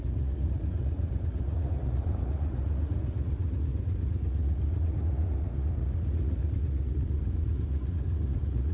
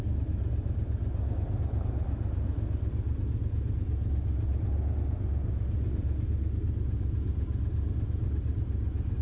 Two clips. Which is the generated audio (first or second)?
first